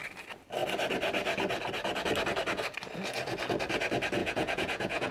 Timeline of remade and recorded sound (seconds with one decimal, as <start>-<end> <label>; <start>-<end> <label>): 0.0-4.2 recorded; 4.2-5.1 remade